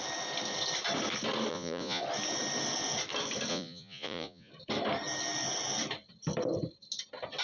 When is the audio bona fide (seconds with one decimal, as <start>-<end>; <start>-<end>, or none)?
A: 0.0-1.5; 2.0-3.5; 4.5-7.4